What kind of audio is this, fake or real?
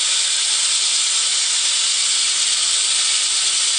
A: real